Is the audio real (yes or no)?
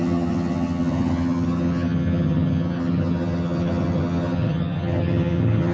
no